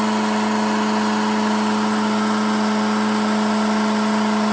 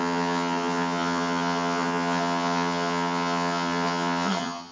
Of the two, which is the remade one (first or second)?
second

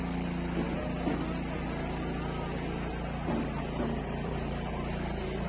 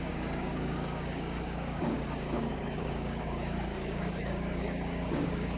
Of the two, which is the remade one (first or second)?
second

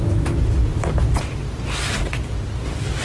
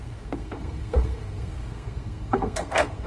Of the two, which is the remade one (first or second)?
second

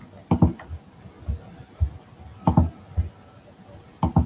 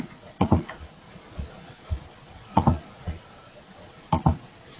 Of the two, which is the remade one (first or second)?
second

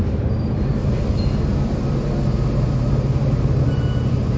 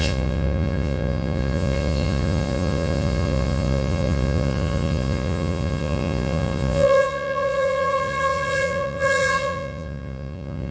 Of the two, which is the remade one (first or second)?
second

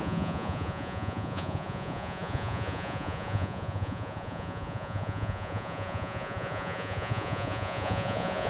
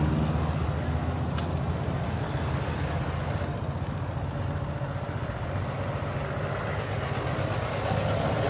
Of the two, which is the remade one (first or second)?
first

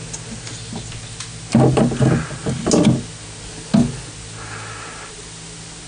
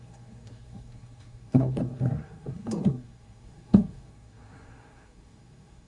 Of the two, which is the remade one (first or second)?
second